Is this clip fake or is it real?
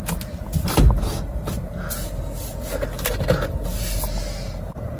real